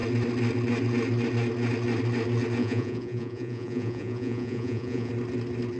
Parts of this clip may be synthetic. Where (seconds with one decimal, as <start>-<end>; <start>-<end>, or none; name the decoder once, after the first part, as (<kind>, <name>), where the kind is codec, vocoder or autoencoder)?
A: 2.6-5.1 (vocoder, Vocos)